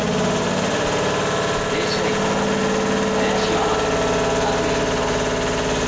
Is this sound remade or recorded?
recorded